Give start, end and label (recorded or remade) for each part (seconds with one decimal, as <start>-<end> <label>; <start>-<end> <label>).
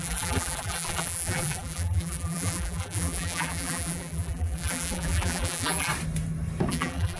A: 0.0-5.9 remade; 5.9-6.7 recorded; 6.7-7.2 remade